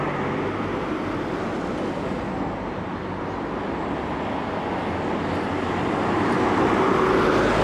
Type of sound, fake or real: real